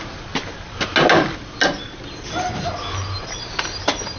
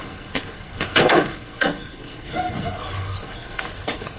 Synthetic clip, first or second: second